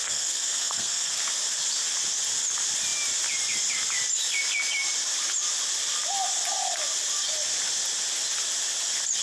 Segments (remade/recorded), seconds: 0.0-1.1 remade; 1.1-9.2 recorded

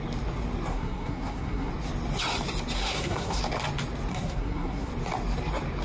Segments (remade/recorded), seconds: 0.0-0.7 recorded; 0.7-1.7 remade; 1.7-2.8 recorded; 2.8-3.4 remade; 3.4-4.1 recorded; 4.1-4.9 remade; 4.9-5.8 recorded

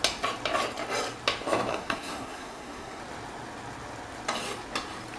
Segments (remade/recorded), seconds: 0.0-1.7 recorded; 1.7-3.0 remade; 3.0-5.2 recorded